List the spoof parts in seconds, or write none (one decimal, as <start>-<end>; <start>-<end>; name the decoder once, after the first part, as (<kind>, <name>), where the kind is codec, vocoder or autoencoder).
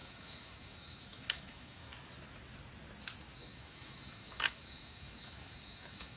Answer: 0.0-1.9 (autoencoder, DAC-VAE); 3.4-6.2